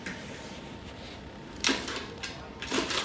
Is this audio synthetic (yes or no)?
no